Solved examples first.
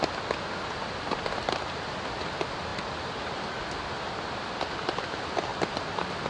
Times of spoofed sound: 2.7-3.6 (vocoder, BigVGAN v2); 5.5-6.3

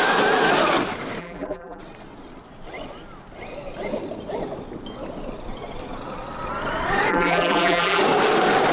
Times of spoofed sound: 1.2-1.8 (vocoder, BigVGAN v2); 7.1-8.0